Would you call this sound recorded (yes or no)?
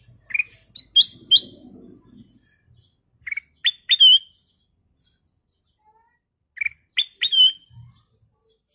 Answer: yes